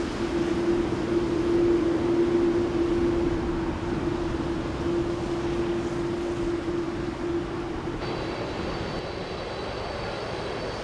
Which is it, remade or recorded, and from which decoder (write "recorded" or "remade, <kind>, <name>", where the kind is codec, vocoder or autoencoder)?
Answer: recorded